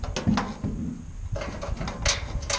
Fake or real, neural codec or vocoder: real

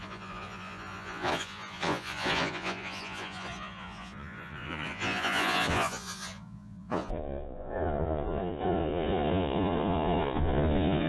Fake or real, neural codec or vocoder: fake, vocoder, Vocos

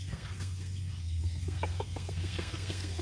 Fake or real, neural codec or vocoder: fake, codec, SNAC